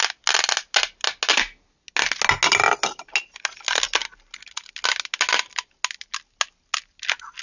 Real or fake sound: real